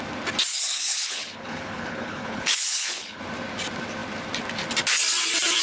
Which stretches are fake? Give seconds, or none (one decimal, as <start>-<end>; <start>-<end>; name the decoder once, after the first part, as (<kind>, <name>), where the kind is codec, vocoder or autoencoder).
0.5-3.2 (codec, HILCodec)